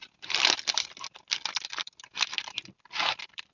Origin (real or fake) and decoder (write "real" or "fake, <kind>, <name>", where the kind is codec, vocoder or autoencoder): real